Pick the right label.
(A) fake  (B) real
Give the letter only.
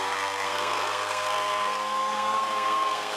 A